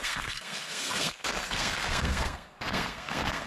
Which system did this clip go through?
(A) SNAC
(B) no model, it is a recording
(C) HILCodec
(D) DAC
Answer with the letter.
A